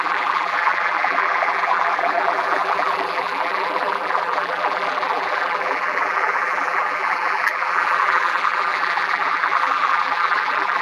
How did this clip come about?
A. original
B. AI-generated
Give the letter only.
B